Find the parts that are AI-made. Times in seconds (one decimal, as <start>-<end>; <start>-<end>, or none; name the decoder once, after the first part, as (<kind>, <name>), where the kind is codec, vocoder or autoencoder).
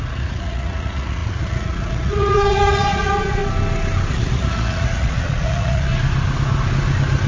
0.0-3.4 (vocoder, Vocos); 4.1-5.9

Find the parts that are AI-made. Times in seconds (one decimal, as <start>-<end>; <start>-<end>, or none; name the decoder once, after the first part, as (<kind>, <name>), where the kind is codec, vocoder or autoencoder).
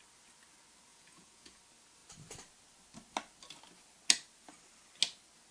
0.9-1.6 (vocoder, Vocos)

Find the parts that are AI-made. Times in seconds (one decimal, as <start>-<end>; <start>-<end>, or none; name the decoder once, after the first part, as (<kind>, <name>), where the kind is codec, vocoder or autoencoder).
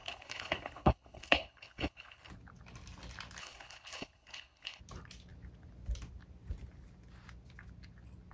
0.0-2.3 (codec, HILCodec); 3.4-4.8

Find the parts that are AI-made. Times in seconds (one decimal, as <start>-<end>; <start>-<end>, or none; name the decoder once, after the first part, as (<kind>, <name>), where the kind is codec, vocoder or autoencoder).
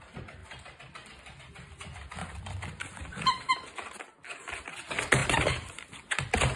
0.4-1.7 (vocoder, BigVGAN v2); 2.2-3.5; 5.2-6.6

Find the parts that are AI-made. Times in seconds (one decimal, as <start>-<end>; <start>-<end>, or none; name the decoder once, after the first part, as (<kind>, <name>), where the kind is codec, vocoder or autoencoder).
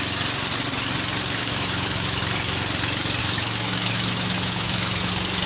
1.4-2.2 (autoencoder, DAC-VAE); 3.2-5.1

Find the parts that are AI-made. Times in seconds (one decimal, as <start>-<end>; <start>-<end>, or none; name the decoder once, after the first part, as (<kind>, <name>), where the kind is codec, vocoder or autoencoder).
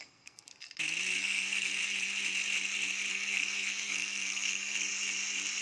0.0-0.5 (codec, SNAC); 1.2-1.8; 3.1-4.9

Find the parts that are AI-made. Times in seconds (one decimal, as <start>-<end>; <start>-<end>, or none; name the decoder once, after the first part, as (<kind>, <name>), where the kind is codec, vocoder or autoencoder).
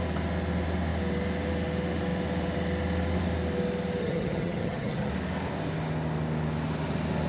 4.0-5.1 (vocoder, HiFi-GAN)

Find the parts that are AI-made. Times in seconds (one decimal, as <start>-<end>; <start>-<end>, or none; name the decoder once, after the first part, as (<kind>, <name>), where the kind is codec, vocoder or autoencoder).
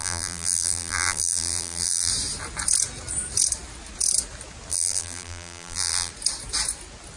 0.0-2.1 (vocoder, BigVGAN v2); 4.7-6.1